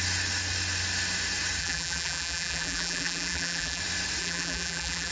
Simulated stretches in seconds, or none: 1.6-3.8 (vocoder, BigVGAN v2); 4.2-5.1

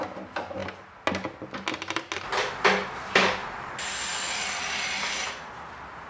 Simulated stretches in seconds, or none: none

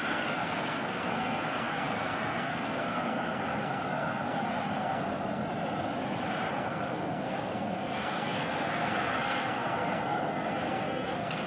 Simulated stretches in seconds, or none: 0.0-5.4 (codec, SNAC); 6.5-11.5

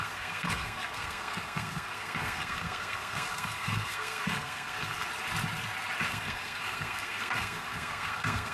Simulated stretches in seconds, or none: 0.0-5.1 (codec, SNAC); 6.1-8.5

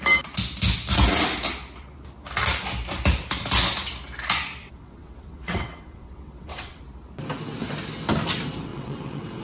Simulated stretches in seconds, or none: 4.6-6.8 (vocoder, WaveNeXt); 8.7-9.4

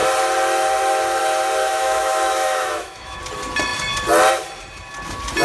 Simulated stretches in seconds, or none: 1.6-3.2 (autoencoder, DAC-VAE)

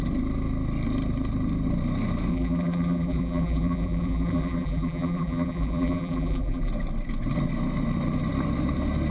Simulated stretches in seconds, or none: 2.3-6.7 (vocoder, BigVGAN v2)

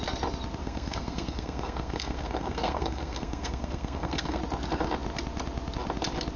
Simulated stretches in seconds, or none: 0.6-4.4 (codec, SNAC)